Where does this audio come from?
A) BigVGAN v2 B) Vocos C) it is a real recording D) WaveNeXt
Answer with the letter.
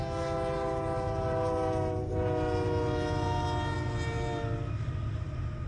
C